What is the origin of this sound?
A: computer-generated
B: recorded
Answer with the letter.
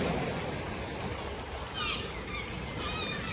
B